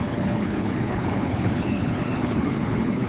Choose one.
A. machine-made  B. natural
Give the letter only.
A